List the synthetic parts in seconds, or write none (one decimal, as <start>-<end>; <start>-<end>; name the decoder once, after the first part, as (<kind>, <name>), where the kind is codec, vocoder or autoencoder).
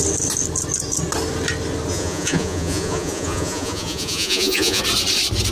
1.9-4.8 (vocoder, Vocos)